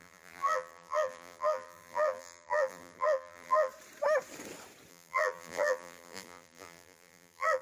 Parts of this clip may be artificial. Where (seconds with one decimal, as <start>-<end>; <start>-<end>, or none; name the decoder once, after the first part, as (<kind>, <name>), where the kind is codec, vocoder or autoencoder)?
0.0-3.7 (vocoder, BigVGAN v2); 4.9-7.6

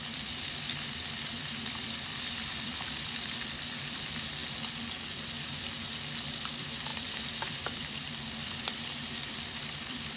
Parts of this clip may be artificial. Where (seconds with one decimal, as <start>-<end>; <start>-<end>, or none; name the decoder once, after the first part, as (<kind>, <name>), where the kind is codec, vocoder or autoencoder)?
0.0-4.4 (vocoder, BigVGAN v2); 6.3-10.2

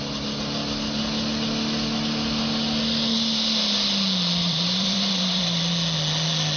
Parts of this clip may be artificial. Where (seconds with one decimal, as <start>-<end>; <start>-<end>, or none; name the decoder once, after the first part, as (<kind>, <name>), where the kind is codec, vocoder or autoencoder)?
4.4-5.6 (vocoder, BigVGAN v2)

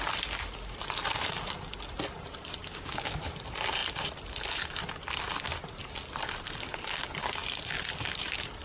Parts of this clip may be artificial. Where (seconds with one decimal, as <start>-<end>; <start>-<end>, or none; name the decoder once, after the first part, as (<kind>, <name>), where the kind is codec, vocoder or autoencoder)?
2.6-3.2 (codec, DAC)